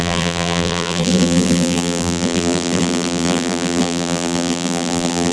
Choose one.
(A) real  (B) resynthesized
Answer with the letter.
B